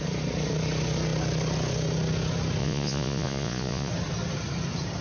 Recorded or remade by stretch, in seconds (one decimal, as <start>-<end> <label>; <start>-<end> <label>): 0.0-2.6 recorded; 2.6-3.9 remade; 3.9-5.0 recorded